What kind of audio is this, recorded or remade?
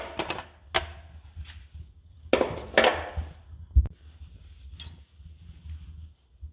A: recorded